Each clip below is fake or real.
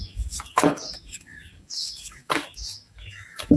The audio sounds fake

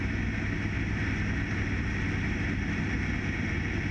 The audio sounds real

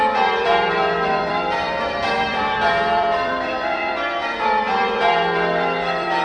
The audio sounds fake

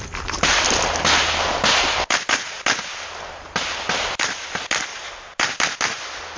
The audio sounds real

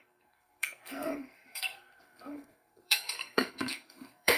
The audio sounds fake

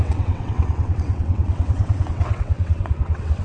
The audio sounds fake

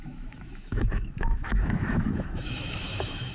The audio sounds fake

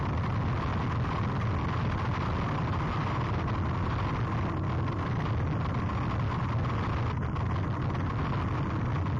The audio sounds real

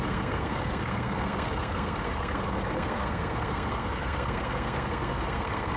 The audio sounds fake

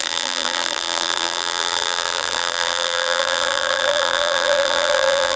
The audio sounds fake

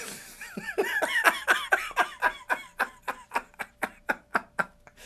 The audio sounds real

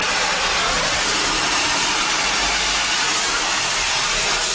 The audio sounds real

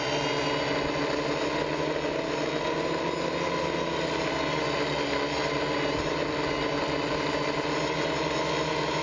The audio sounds real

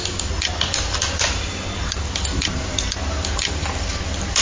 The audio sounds real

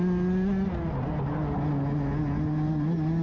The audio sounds real